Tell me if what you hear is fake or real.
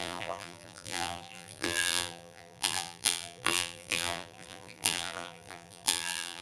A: fake